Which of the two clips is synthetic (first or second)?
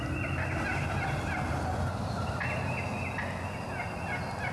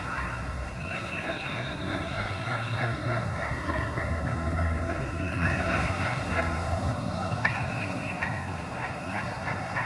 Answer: second